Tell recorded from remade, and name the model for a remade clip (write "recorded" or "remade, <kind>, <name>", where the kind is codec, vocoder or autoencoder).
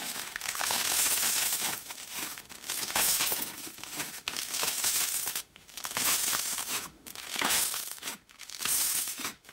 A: remade, autoencoder, DAC-VAE